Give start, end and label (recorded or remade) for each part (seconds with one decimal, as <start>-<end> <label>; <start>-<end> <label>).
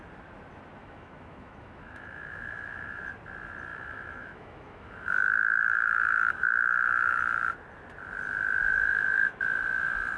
0.0-0.8 recorded; 0.8-3.0 remade; 3.0-3.7 recorded; 3.7-7.2 remade; 7.2-8.6 recorded; 8.6-9.4 remade; 9.4-10.2 recorded